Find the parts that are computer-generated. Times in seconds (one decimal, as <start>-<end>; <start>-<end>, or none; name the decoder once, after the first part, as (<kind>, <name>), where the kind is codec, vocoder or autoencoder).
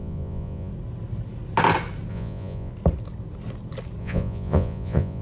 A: 0.0-0.7 (vocoder, Vocos); 2.1-2.7; 4.0-5.2